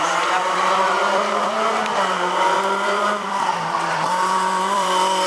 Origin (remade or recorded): remade